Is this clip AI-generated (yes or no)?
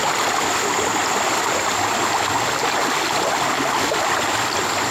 no